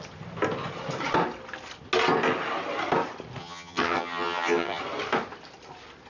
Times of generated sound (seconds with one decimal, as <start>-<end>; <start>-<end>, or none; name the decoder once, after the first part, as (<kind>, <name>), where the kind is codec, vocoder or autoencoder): 3.4-4.8 (vocoder, HiFi-GAN)